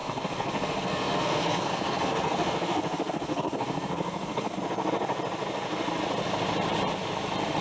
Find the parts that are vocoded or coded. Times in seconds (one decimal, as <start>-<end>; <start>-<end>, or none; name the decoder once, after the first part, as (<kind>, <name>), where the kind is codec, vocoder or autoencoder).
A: 0.0-4.6 (codec, SNAC)